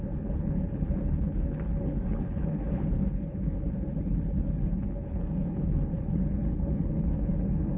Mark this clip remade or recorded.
remade